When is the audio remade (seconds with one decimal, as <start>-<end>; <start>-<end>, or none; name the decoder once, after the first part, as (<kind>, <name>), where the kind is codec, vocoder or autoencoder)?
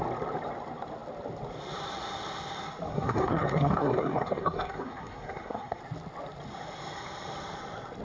2.9-5.8 (codec, SNAC)